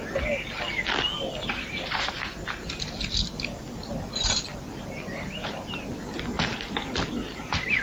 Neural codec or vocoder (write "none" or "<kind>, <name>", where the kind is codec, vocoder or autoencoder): none